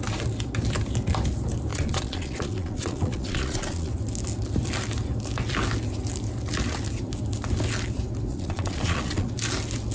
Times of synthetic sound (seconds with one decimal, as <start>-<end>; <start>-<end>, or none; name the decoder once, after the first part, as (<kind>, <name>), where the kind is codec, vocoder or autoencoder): 1.7-3.9 (vocoder, Vocos); 8.3-9.3